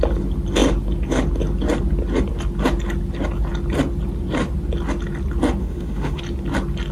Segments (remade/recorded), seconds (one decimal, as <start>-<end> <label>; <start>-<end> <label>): 0.0-5.6 recorded; 5.6-6.2 remade; 6.2-6.9 recorded